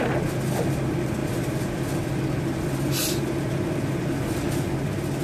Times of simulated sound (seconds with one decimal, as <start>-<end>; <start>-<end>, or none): none